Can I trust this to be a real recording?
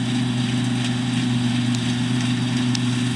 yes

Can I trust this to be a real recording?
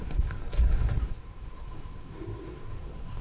no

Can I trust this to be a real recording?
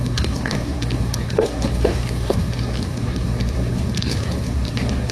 no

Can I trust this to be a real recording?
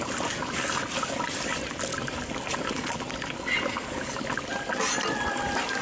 yes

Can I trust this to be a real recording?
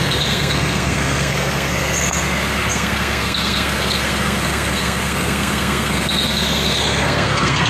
no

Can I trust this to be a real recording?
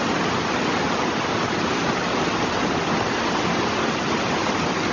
yes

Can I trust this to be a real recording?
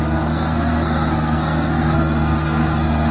no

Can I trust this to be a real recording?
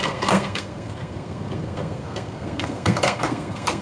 no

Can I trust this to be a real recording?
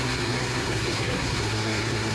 no